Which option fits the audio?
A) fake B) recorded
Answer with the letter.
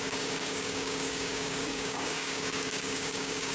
A